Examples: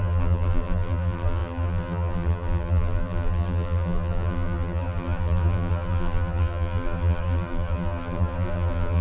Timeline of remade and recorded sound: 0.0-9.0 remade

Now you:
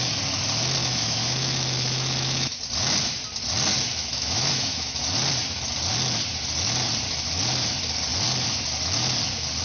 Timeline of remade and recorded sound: 0.0-0.8 recorded; 0.8-2.6 remade; 2.6-3.9 recorded; 3.9-5.0 remade; 5.0-9.6 recorded